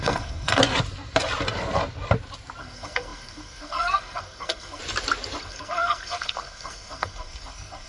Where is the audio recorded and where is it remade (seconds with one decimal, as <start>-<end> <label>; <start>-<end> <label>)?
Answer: 0.0-0.6 remade; 0.6-2.6 recorded; 2.6-4.8 remade; 4.8-5.4 recorded; 5.4-7.9 remade